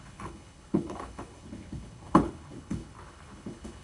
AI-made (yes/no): yes